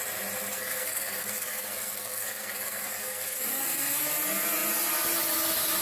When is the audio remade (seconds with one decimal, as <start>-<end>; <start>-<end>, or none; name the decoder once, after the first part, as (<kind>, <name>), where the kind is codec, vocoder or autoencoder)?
0.5-4.0 (codec, SNAC)